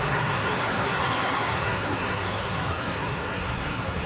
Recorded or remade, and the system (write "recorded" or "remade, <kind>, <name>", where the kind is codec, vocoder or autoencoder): remade, codec, SNAC